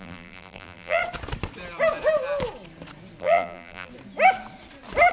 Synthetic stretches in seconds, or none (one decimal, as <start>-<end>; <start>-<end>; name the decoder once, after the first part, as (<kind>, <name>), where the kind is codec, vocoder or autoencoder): 0.0-1.0 (vocoder, BigVGAN v2); 3.2-3.9

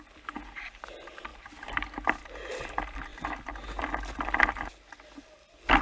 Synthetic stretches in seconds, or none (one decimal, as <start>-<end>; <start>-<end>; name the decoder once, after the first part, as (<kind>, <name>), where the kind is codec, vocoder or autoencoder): 1.3-2.6 (vocoder, BigVGAN v2)